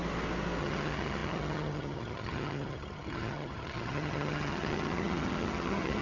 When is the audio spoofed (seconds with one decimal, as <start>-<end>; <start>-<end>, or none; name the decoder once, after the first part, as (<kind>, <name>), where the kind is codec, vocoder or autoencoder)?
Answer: 0.6-6.0 (vocoder, HiFi-GAN)